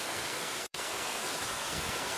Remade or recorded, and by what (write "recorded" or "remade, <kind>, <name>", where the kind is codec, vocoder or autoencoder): remade, codec, SNAC